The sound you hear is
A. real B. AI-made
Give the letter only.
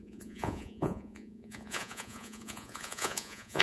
B